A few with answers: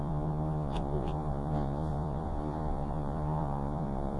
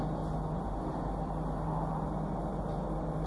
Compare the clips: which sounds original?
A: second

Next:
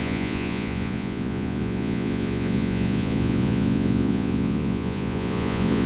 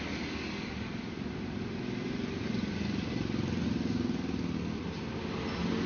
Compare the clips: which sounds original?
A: second